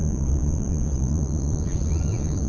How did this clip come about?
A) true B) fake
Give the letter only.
B